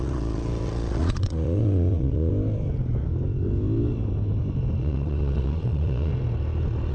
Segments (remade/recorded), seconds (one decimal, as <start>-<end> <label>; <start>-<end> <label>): 0.0-2.3 remade; 2.3-4.8 recorded; 4.8-6.1 remade; 6.1-6.9 recorded